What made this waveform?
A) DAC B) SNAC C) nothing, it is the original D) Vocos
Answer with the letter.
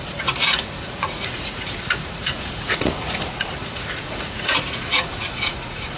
D